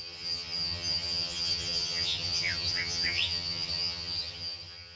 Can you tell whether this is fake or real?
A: fake